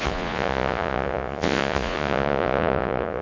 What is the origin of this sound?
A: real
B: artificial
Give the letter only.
B